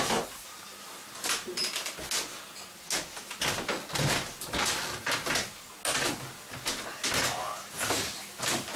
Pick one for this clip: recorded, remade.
recorded